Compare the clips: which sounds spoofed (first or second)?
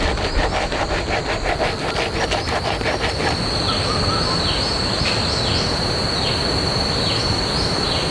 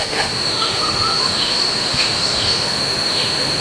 second